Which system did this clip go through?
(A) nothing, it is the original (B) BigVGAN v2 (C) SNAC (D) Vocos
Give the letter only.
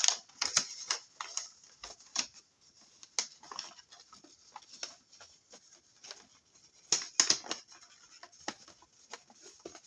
A